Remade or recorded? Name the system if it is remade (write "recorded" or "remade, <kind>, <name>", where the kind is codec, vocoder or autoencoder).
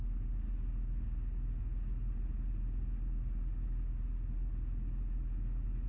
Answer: recorded